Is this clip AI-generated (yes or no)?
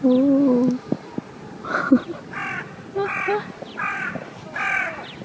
no